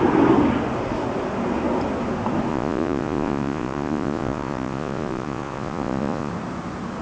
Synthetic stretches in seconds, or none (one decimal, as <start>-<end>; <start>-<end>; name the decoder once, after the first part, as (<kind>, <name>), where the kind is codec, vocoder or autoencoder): 2.5-6.3 (vocoder, Vocos)